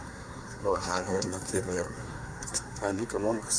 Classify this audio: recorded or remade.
remade